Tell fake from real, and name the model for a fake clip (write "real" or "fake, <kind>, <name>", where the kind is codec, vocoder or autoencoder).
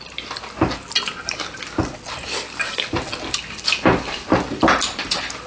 real